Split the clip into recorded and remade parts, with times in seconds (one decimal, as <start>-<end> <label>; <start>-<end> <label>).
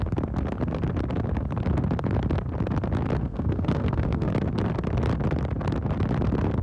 0.0-3.2 recorded; 3.2-4.3 remade; 4.3-6.6 recorded